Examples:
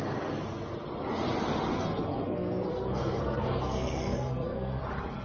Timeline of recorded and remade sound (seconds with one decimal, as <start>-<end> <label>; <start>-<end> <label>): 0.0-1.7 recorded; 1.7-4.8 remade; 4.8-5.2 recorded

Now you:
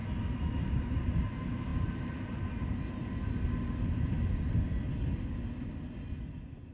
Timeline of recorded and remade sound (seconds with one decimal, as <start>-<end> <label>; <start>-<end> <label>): 0.0-6.7 recorded

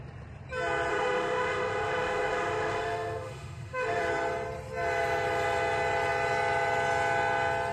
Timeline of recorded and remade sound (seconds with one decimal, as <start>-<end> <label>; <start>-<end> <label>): 0.0-0.9 recorded; 0.9-4.0 remade; 4.0-7.7 recorded

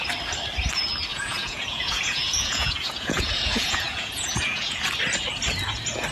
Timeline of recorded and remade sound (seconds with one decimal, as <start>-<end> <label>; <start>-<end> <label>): 0.0-1.1 recorded; 1.1-4.8 remade; 4.8-6.1 recorded

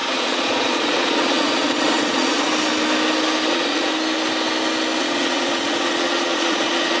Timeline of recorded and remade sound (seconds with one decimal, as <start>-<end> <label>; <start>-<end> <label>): 0.0-2.5 remade; 2.5-3.5 recorded; 3.5-3.9 remade; 3.9-5.0 recorded; 5.0-7.0 remade